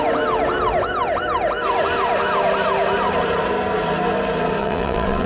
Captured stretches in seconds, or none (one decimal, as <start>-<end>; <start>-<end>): 0.0-4.6